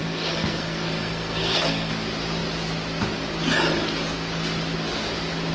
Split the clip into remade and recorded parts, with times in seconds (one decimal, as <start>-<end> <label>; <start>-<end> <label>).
0.0-1.9 remade; 1.9-5.5 recorded